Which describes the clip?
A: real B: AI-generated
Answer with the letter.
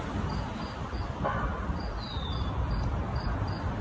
A